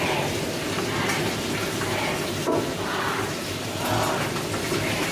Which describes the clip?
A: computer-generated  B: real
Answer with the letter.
B